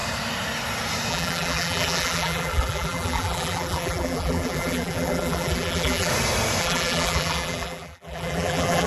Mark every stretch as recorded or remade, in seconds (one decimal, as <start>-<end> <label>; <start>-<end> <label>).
0.0-1.1 recorded; 1.1-6.1 remade; 6.1-6.6 recorded; 6.6-8.9 remade